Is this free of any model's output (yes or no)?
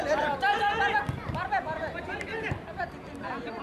yes